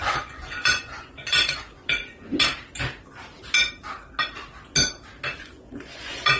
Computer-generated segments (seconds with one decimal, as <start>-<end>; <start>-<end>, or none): 0.0-2.0; 5.4-6.4